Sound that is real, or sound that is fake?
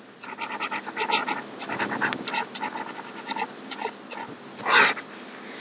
real